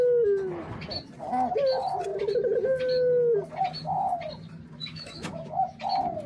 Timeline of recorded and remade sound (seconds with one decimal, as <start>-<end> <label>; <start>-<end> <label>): 0.0-4.8 recorded; 4.8-5.8 remade; 5.8-6.3 recorded